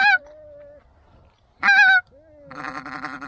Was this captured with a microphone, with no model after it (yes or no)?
yes